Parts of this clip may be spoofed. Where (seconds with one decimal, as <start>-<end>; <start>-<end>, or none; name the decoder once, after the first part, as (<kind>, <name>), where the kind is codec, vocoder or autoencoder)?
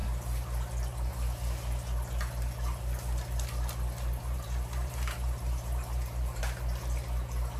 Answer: 4.2-6.4 (vocoder, BigVGAN v2)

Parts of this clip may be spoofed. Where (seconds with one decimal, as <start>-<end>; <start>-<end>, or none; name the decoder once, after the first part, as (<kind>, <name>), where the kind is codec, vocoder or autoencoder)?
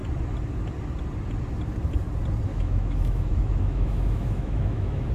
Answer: 2.5-5.1 (autoencoder, DAC-VAE)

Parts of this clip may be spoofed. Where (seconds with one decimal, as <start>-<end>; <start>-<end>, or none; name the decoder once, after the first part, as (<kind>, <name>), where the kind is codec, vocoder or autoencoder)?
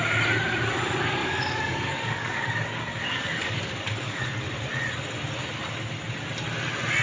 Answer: 1.2-4.2 (codec, DAC)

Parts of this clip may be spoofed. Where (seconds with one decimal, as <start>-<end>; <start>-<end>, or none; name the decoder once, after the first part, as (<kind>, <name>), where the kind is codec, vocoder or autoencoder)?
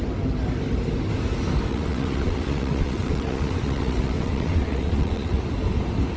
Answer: 1.7-5.4 (vocoder, WaveNeXt)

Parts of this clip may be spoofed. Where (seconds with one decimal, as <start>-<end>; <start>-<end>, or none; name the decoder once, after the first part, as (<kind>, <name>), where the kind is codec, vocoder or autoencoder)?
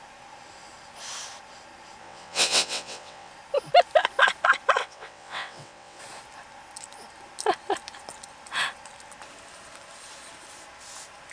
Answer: 2.0-3.3 (vocoder, WaveNeXt); 4.8-6.0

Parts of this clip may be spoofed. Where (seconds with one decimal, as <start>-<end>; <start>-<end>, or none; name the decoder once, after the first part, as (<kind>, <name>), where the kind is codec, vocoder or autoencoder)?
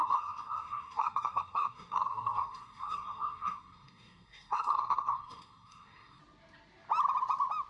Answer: 0.0-6.2 (codec, SNAC)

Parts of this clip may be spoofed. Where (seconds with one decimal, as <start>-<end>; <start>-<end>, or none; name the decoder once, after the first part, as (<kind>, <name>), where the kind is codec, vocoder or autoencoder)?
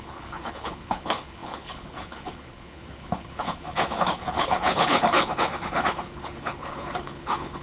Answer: 0.0-7.6 (codec, HILCodec)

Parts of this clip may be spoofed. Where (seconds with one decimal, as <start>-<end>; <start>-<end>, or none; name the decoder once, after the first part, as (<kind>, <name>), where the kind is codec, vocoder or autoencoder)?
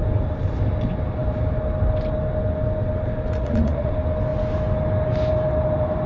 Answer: 3.4-3.9 (vocoder, Vocos)